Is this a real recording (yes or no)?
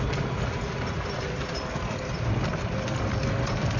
yes